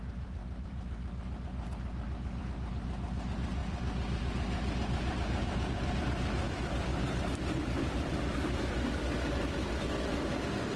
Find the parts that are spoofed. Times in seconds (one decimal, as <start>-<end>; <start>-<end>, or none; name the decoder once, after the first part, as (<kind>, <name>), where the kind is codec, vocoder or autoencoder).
0.0-10.8 (vocoder, BigVGAN v2)